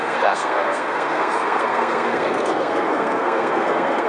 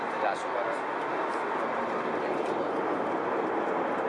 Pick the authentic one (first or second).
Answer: second